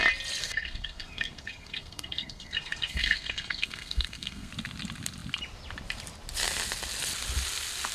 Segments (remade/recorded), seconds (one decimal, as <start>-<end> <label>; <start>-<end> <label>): 0.0-0.4 recorded; 0.4-4.5 remade; 4.5-7.9 recorded